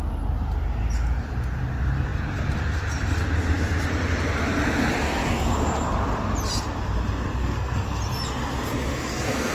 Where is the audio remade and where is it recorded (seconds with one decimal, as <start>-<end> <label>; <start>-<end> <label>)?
0.0-7.4 recorded; 7.4-8.0 remade; 8.0-8.9 recorded; 8.9-9.5 remade